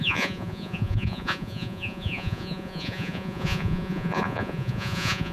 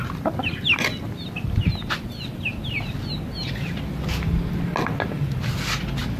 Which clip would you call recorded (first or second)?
second